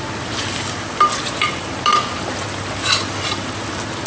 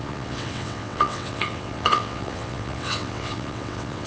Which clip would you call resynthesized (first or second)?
second